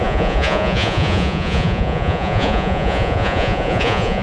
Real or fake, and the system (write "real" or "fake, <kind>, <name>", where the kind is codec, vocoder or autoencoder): fake, vocoder, Vocos